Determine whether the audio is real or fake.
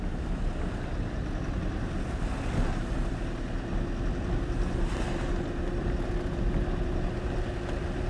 real